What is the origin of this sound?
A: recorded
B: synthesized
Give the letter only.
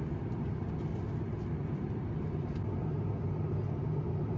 A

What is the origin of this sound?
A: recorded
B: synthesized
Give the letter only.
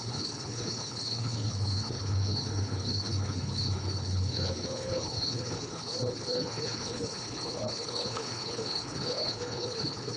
B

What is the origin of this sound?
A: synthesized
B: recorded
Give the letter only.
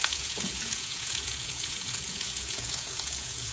A